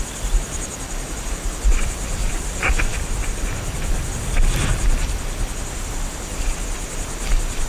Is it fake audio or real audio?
real